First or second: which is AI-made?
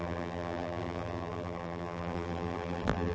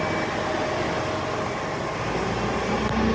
first